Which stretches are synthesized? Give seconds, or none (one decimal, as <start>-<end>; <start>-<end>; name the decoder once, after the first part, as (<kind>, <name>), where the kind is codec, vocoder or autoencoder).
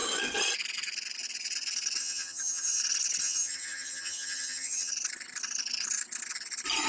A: 2.0-2.8 (vocoder, HiFi-GAN); 3.2-4.9